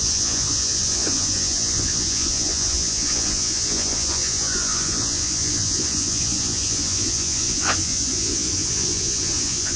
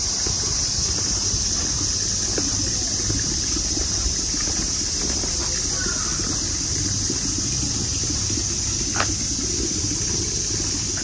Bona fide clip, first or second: second